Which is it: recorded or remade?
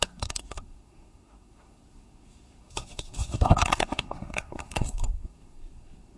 remade